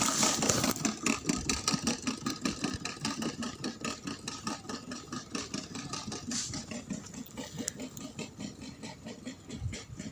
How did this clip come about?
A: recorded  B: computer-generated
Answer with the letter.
A